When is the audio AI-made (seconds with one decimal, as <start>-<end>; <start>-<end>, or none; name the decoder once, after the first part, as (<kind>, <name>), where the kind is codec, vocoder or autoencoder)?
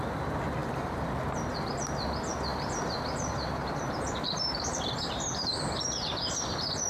0.6-1.1 (vocoder, BigVGAN v2); 2.5-5.8